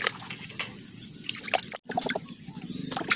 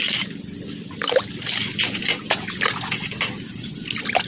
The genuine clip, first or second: first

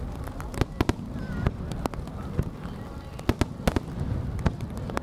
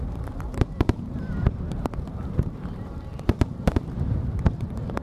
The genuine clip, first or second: first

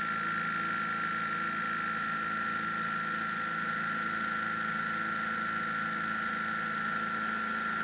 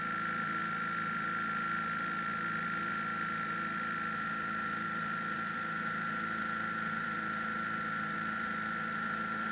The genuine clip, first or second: first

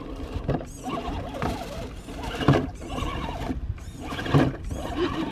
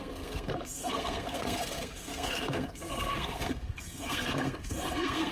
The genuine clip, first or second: first